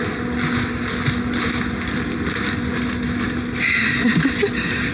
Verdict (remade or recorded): recorded